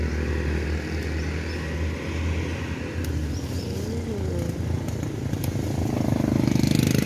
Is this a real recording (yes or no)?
yes